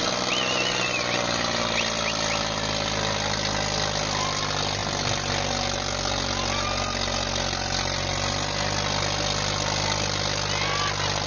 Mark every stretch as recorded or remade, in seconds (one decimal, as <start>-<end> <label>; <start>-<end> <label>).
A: 0.0-11.3 recorded